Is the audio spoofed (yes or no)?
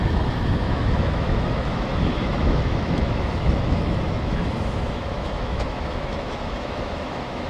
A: yes